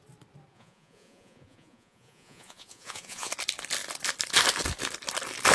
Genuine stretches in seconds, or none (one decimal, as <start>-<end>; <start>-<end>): 0.0-0.5; 3.3-5.5